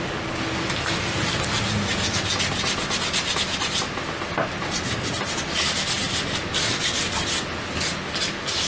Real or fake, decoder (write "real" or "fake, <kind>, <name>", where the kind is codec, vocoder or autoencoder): real